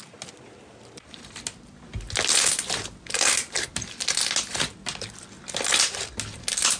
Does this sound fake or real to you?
real